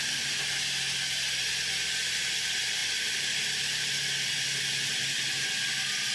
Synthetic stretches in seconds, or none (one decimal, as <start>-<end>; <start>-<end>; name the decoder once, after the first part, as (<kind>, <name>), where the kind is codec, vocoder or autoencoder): none